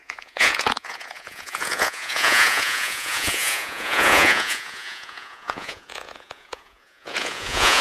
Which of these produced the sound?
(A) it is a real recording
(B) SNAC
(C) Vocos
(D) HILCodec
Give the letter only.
C